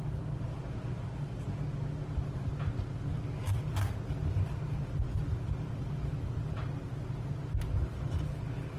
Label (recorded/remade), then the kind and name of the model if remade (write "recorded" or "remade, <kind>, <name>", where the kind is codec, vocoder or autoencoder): recorded